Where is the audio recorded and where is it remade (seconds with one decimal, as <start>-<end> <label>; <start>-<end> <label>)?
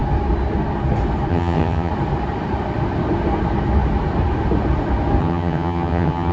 0.0-1.3 recorded; 1.3-1.9 remade; 1.9-5.2 recorded; 5.2-6.3 remade